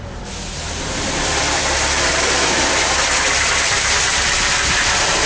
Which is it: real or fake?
fake